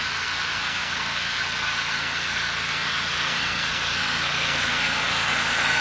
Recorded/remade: remade